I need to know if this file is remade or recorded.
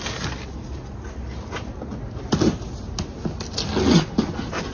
recorded